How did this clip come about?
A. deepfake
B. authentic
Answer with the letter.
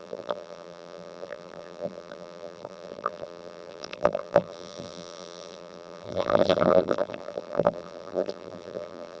A